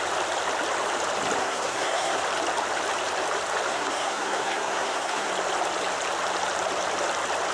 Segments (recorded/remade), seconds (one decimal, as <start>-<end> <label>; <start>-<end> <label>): 0.0-1.4 recorded; 1.4-2.2 remade; 2.2-3.7 recorded; 3.7-5.3 remade; 5.3-7.5 recorded